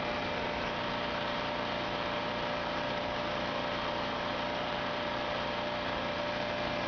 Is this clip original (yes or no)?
yes